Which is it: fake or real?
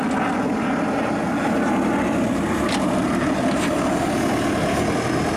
real